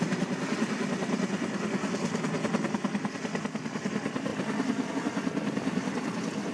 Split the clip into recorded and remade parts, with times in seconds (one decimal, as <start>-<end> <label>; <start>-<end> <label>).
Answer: 0.0-6.5 recorded